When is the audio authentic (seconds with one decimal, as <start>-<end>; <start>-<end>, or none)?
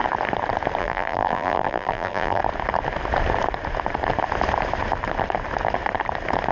0.0-0.8; 2.4-6.5